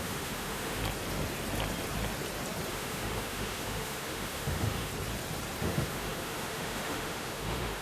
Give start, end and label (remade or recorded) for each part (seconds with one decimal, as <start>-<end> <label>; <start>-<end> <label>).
0.0-0.8 remade; 0.8-2.7 recorded; 2.7-4.9 remade; 4.9-5.6 recorded; 5.6-7.8 remade